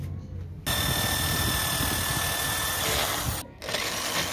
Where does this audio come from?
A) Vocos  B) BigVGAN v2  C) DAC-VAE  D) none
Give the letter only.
D